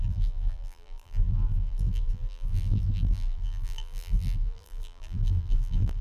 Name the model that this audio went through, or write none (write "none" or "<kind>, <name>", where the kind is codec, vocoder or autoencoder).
vocoder, BigVGAN v2